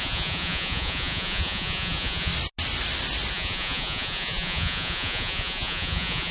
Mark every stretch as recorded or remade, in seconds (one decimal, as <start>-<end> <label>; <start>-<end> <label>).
0.0-2.3 remade; 2.3-3.3 recorded; 3.3-6.3 remade